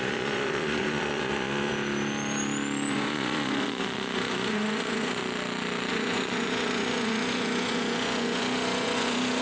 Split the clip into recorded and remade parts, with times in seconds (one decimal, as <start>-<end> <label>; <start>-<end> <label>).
0.0-1.7 remade; 1.7-2.9 recorded; 2.9-5.2 remade; 5.2-5.9 recorded; 5.9-9.4 remade